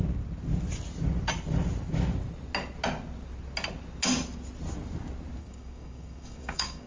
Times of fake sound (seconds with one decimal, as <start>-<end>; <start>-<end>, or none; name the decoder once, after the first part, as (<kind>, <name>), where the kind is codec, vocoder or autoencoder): 5.4-6.9 (codec, DAC)